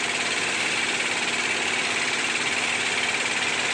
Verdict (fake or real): real